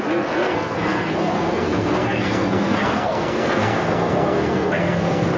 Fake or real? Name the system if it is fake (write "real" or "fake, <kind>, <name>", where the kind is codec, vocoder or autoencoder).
fake, codec, SNAC